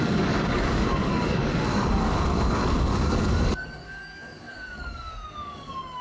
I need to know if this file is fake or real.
fake